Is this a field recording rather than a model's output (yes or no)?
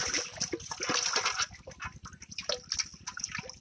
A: yes